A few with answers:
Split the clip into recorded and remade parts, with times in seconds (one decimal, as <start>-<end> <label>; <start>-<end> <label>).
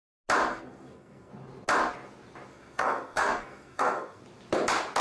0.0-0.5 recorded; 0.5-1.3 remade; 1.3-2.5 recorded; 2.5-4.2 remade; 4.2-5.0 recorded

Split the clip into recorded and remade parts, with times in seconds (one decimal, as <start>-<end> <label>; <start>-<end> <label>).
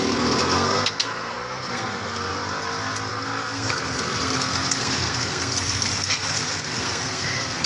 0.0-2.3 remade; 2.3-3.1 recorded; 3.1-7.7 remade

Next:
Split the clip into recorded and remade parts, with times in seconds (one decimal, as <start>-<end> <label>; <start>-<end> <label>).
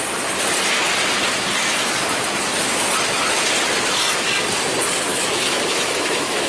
0.0-5.1 recorded; 5.1-6.5 remade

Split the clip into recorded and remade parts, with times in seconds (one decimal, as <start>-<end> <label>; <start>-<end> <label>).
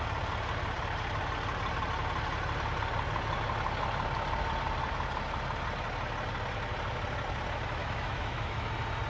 0.0-7.8 recorded; 7.8-8.7 remade; 8.7-9.1 recorded